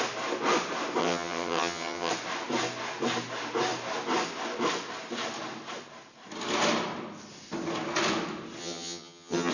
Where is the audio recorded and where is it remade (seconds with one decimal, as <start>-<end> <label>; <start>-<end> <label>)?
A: 0.0-1.0 recorded; 1.0-2.1 remade; 2.1-8.6 recorded; 8.6-9.5 remade